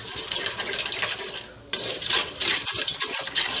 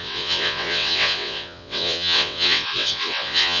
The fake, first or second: second